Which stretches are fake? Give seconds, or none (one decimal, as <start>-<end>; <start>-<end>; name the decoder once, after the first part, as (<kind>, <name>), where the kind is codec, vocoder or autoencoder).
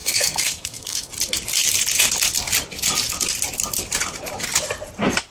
0.0-1.1 (codec, SNAC)